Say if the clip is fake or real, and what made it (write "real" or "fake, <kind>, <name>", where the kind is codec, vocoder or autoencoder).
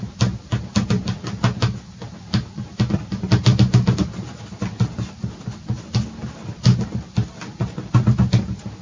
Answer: real